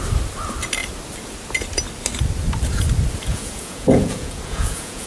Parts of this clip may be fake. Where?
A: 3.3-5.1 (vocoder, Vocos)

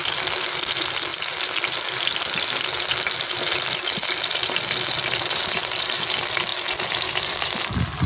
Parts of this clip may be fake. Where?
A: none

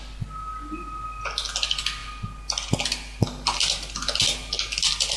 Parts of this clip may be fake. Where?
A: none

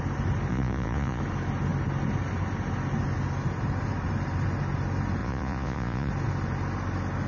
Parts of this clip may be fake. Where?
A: 0.5-1.2 (vocoder, Vocos); 5.2-6.1

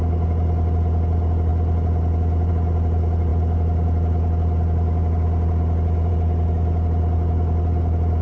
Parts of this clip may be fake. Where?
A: none

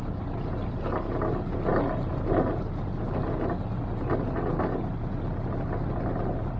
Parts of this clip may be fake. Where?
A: none

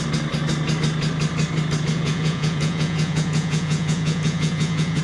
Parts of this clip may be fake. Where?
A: 1.9-5.0 (vocoder, Vocos)

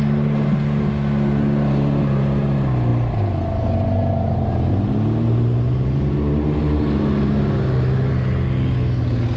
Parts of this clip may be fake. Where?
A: none